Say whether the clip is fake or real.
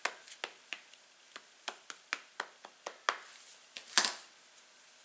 real